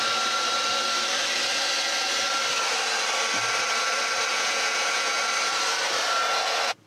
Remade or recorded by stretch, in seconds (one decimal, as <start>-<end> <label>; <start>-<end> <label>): 0.0-4.3 recorded; 4.3-5.2 remade; 5.2-6.9 recorded